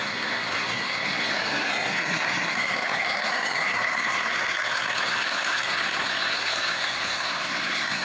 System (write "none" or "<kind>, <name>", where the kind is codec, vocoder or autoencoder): codec, SNAC